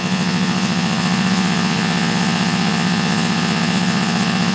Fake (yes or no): yes